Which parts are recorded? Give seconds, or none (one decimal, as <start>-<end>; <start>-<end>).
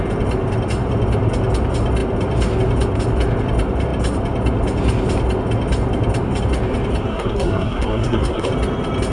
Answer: 0.0-7.1; 8.5-9.1